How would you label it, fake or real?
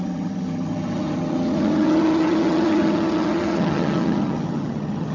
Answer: fake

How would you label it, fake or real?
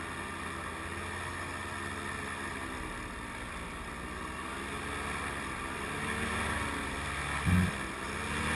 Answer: real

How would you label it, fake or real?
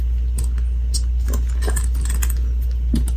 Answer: real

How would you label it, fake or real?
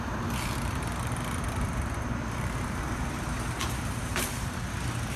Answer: fake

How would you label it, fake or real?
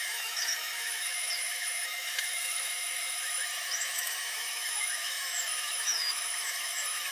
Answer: fake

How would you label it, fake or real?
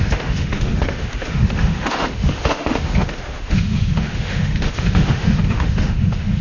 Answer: fake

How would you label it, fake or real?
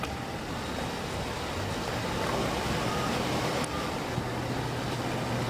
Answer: real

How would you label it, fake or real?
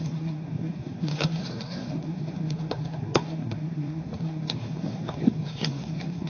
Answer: fake